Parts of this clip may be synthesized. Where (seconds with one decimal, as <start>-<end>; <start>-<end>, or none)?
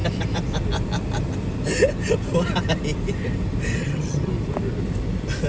3.8-4.3